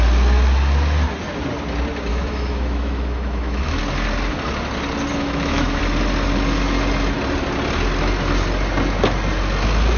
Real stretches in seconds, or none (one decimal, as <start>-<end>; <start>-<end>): 0.0-2.1; 3.8-5.1; 5.8-10.0